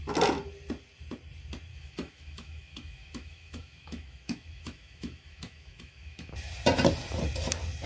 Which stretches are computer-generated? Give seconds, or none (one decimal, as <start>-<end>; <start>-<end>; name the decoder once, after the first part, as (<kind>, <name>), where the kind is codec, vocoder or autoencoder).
1.7-6.3 (autoencoder, DAC-VAE)